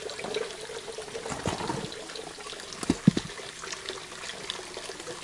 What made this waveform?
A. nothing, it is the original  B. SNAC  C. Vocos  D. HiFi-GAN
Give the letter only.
A